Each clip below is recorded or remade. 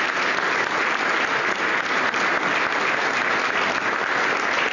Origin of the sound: recorded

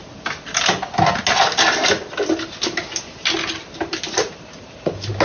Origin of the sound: recorded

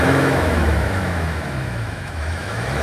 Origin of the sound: remade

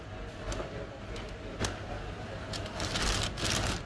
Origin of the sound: recorded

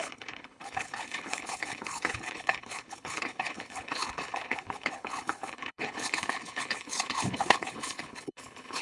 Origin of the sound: remade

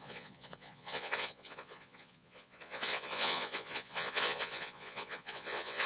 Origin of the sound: remade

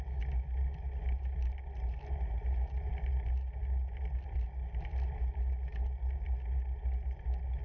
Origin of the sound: recorded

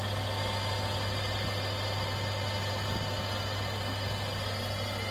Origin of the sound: recorded